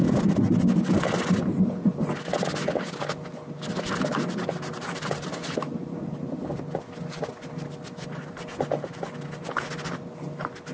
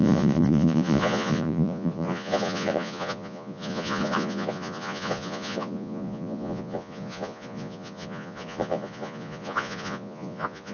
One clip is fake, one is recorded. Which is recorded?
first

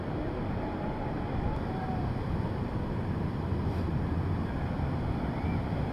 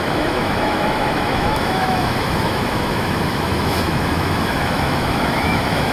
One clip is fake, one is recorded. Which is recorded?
first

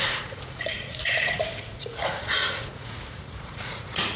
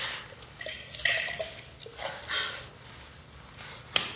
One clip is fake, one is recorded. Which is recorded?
second